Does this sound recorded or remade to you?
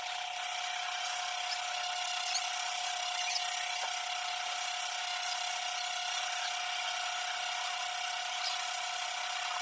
recorded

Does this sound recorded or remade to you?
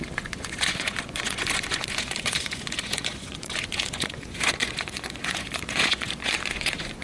remade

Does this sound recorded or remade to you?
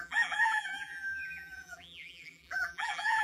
remade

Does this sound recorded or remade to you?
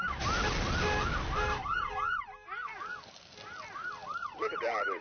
recorded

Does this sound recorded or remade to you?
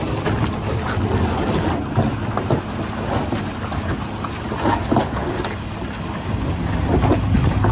recorded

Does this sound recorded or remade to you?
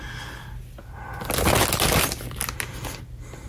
recorded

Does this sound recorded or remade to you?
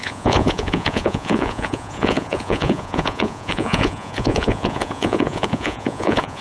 remade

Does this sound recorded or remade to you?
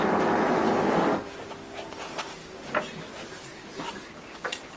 recorded